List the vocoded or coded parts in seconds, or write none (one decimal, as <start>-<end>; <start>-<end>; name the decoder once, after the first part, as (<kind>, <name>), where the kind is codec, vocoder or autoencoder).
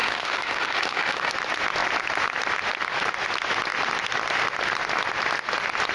0.0-1.3 (autoencoder, DAC-VAE)